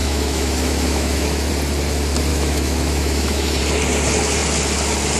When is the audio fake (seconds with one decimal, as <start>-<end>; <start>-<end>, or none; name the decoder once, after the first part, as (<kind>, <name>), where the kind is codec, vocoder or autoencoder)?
0.0-1.5 (autoencoder, DAC-VAE); 2.3-3.6